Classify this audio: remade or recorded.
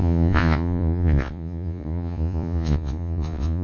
remade